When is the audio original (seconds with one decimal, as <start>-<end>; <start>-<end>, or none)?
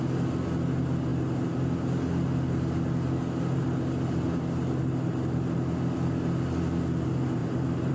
0.0-7.9